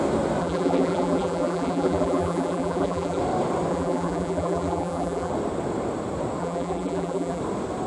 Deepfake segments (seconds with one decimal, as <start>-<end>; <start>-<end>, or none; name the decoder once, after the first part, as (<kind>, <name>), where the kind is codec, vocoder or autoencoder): 0.4-3.2 (vocoder, BigVGAN v2); 3.7-5.3; 6.4-7.4